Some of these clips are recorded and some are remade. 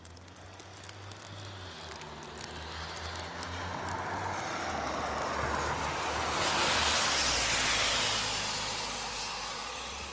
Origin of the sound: recorded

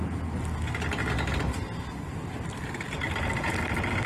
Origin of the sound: recorded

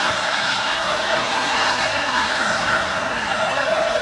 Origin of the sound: remade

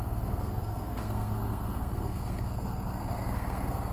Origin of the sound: remade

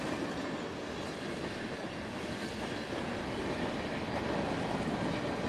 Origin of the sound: recorded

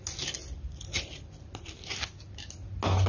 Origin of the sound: recorded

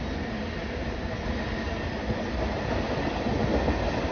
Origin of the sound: recorded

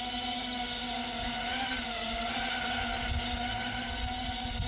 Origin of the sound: recorded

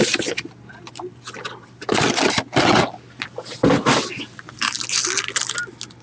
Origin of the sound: recorded